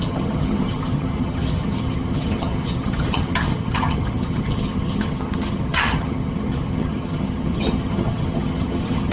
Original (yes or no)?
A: no